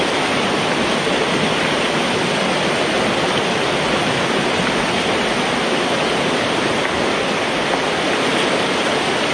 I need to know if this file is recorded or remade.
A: recorded